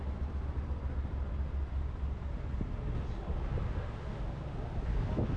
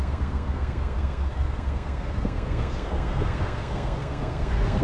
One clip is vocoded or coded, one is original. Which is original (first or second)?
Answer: first